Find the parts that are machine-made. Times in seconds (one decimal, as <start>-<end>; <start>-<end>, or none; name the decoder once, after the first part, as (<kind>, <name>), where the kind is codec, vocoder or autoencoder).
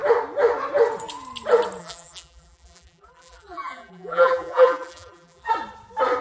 1.8-5.5 (vocoder, BigVGAN v2)